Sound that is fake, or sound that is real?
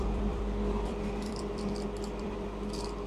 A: fake